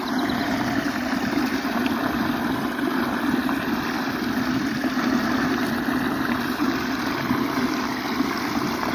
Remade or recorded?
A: recorded